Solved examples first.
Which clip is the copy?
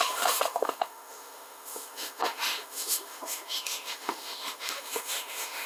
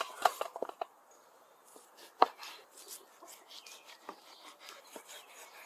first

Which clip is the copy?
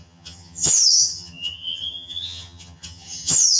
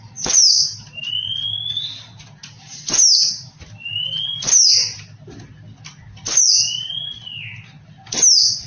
first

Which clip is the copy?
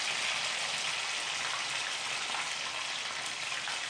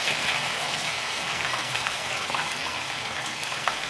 second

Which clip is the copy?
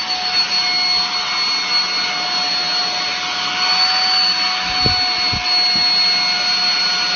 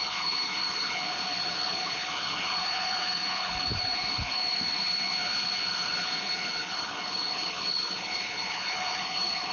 second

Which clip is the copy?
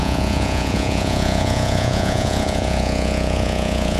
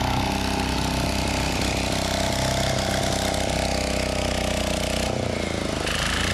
first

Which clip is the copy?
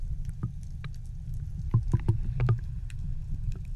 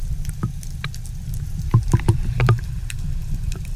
second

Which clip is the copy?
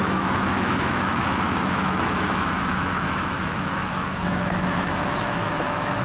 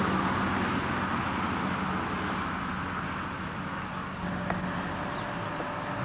first